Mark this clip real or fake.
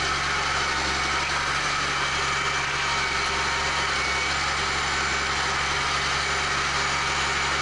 real